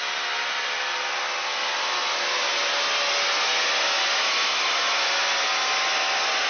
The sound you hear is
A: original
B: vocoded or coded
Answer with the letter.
A